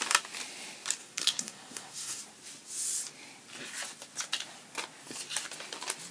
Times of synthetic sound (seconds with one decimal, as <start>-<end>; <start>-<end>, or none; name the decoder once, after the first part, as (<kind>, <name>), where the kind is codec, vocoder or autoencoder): 1.0-2.2 (codec, SNAC)